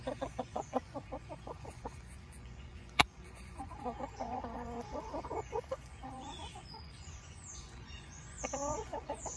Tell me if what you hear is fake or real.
fake